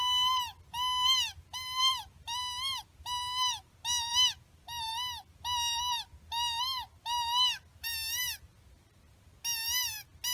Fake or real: real